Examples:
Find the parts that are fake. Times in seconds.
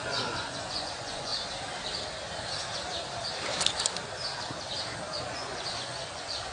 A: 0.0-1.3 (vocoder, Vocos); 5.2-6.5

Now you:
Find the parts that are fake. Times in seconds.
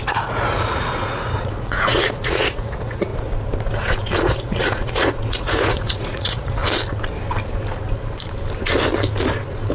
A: 0.0-3.1 (vocoder, Vocos); 4.2-6.6